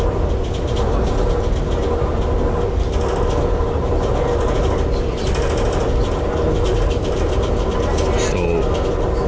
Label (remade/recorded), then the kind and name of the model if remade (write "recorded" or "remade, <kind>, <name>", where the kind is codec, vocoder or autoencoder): recorded